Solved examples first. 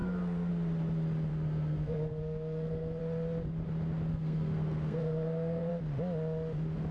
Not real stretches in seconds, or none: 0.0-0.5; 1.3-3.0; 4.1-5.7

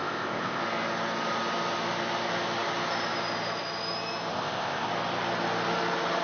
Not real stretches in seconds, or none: 0.0-0.6; 4.3-4.9

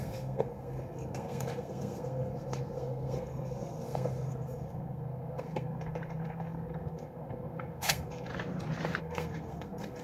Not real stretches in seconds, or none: 0.0-8.3; 9.0-10.0